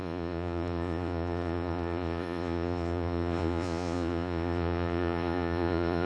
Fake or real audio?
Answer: fake